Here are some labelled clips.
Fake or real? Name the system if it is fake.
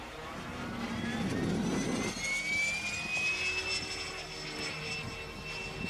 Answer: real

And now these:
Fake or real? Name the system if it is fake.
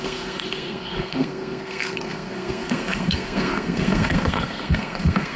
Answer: fake, codec, SNAC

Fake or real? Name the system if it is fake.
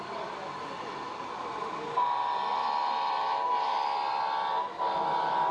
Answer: real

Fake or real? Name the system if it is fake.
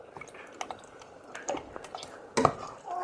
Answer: real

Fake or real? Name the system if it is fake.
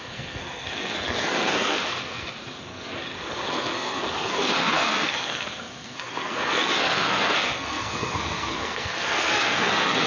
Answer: fake, codec, SNAC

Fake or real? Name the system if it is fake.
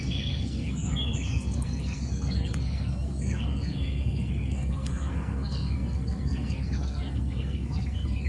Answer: fake, codec, SNAC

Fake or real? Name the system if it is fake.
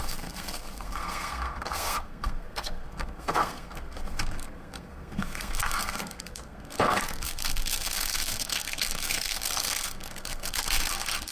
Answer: fake, codec, SNAC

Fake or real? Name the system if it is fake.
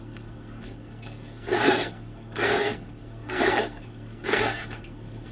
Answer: fake, codec, SNAC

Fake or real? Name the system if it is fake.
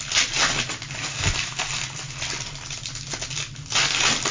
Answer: real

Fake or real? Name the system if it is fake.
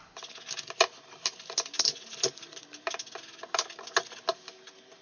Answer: real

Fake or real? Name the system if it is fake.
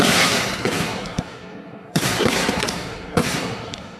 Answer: fake, codec, SNAC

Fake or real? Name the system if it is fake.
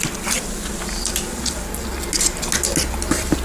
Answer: real